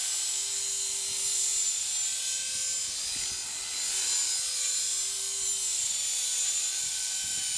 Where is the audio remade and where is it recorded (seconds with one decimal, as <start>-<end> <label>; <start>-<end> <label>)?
0.0-7.6 recorded

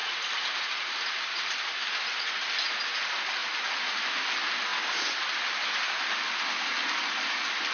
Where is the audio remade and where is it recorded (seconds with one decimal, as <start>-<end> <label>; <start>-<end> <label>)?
0.0-7.7 recorded

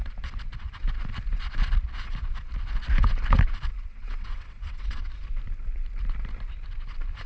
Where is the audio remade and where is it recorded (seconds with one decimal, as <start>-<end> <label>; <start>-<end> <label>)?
0.0-3.8 recorded; 3.8-5.1 remade; 5.1-7.3 recorded

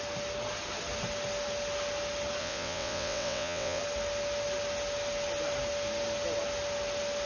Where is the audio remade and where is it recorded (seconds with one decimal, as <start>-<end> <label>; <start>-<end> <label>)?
0.0-2.4 recorded; 2.4-3.8 remade; 3.8-7.3 recorded

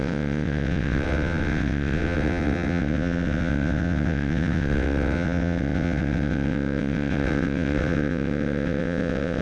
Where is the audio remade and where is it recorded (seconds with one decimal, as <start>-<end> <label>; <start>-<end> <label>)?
0.0-9.4 remade

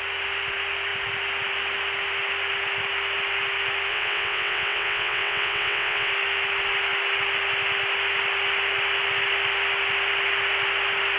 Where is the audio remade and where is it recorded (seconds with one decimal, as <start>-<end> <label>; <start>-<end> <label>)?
0.0-3.9 recorded; 3.9-6.1 remade; 6.1-11.2 recorded